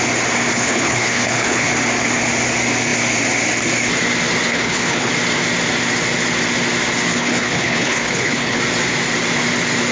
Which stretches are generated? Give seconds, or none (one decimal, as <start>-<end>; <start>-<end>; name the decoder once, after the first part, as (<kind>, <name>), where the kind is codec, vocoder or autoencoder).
0.5-1.7 (codec, HILCodec); 4.5-5.1; 7.1-8.6